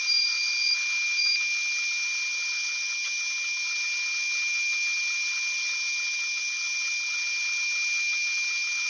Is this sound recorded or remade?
recorded